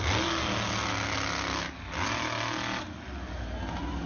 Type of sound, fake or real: real